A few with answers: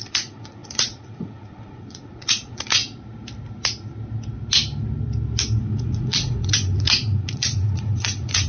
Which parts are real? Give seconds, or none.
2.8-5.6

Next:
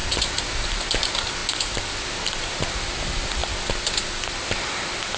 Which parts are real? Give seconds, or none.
0.0-5.2